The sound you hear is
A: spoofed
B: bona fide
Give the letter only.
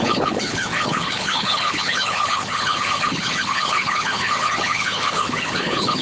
A